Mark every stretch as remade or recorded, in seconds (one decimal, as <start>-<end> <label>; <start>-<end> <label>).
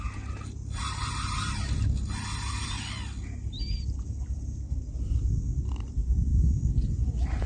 0.0-7.5 recorded